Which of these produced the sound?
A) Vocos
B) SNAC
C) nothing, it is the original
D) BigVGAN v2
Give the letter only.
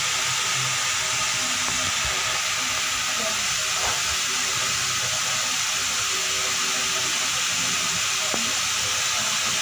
C